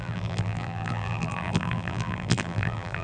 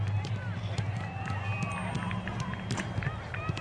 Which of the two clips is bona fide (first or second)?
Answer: second